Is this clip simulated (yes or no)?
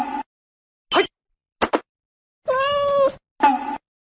no